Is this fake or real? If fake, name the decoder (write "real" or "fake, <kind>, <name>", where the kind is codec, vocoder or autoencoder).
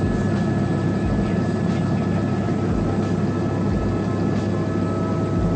real